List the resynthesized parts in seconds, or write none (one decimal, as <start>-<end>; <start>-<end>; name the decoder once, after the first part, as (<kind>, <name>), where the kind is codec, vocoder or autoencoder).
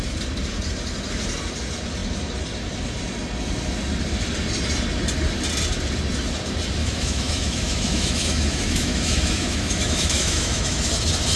6.8-10.9 (autoencoder, DAC-VAE)